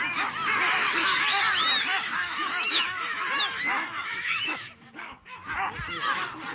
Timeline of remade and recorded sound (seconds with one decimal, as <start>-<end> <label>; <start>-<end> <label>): 0.0-0.8 recorded; 0.8-1.4 remade; 1.4-1.9 recorded; 1.9-5.5 remade; 5.5-6.5 recorded